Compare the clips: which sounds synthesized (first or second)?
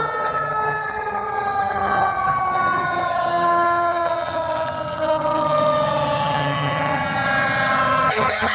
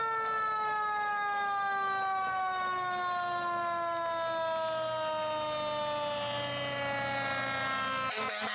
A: first